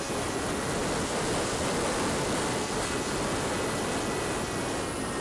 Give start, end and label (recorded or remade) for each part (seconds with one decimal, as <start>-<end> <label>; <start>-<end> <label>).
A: 0.0-5.2 recorded